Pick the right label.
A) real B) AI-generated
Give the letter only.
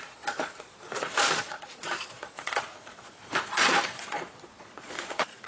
B